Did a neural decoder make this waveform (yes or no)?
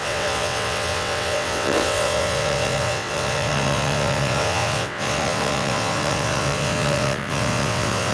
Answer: yes